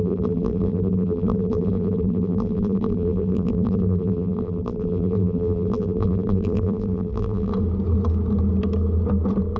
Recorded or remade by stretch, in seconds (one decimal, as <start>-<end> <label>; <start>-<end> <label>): 0.0-7.5 remade; 7.5-9.6 recorded